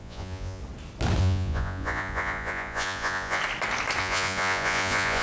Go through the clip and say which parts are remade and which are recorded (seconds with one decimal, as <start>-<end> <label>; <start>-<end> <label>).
0.0-0.6 remade; 0.6-1.2 recorded; 1.2-3.4 remade; 3.4-4.0 recorded; 4.0-5.2 remade